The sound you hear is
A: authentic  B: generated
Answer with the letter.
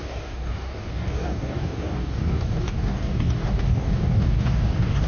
B